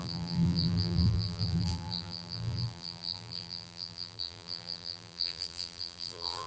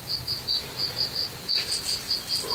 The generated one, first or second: first